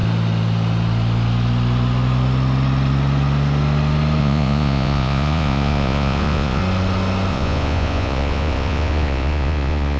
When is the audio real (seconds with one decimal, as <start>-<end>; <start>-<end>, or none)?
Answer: 0.0-4.2; 6.6-7.3